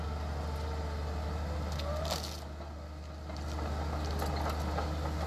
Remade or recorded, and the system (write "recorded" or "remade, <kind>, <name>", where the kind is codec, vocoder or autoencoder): recorded